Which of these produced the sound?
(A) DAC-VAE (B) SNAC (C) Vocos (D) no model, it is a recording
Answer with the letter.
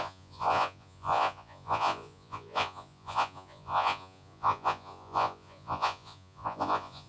C